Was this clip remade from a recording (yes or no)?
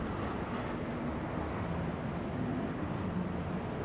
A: no